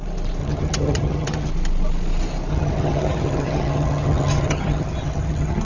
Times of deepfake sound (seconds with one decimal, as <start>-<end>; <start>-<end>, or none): 0.4-1.5; 2.5-5.6